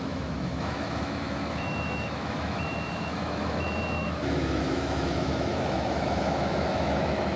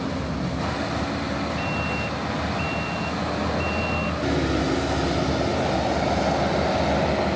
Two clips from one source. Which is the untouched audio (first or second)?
second